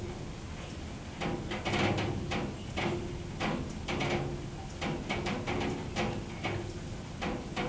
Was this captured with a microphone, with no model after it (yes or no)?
yes